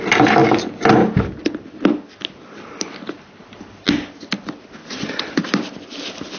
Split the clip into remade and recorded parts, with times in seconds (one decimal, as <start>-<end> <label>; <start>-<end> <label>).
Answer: 0.0-4.8 recorded; 4.8-5.4 remade; 5.4-6.4 recorded